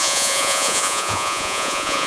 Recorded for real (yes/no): no